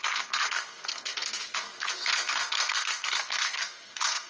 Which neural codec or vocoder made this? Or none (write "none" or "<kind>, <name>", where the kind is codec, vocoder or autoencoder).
codec, SNAC